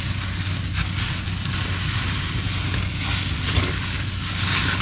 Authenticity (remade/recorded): recorded